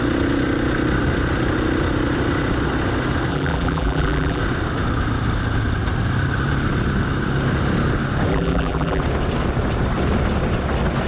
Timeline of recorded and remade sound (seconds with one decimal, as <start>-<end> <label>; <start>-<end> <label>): 0.0-3.3 recorded; 3.3-4.4 remade; 4.4-8.3 recorded; 8.3-9.0 remade; 9.0-11.1 recorded